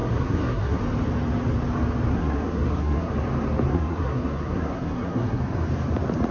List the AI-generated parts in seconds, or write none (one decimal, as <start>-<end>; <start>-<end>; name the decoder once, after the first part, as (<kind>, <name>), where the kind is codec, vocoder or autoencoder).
0.0-0.8 (codec, SNAC); 2.1-3.1; 3.7-5.4